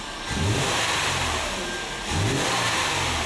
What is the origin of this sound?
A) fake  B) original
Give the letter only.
B